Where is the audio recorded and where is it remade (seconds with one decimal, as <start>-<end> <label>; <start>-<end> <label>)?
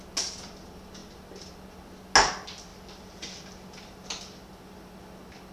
0.0-2.7 recorded; 2.7-4.5 remade; 4.5-5.5 recorded